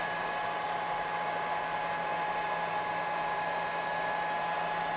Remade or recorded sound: recorded